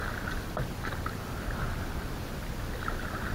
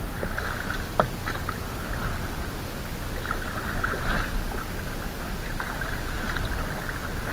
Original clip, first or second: second